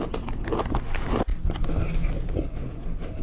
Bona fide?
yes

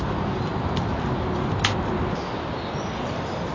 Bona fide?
yes